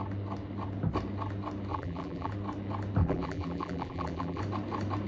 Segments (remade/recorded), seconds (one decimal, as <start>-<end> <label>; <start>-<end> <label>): 0.0-1.7 recorded; 1.7-2.3 remade; 2.3-3.0 recorded; 3.0-4.4 remade; 4.4-5.1 recorded